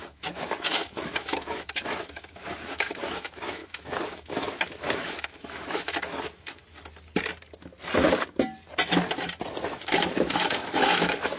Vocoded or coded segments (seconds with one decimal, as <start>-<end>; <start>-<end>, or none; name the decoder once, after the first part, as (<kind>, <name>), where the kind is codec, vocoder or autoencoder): 0.0-6.6 (autoencoder, DAC-VAE); 9.7-11.4